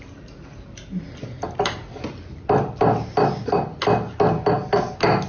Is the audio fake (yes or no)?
no